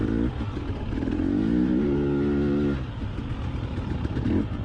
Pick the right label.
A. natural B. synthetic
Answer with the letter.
A